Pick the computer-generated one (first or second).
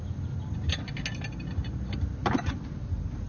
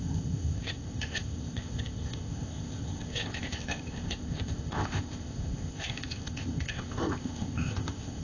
second